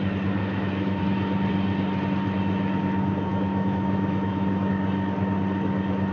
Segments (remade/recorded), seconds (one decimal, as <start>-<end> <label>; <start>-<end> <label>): 0.0-0.4 recorded; 0.4-1.0 remade; 1.0-3.3 recorded; 3.3-4.7 remade; 4.7-6.1 recorded